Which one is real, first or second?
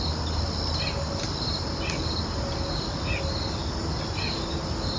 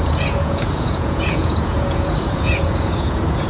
first